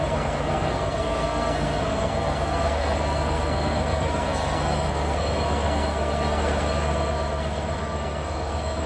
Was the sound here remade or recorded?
remade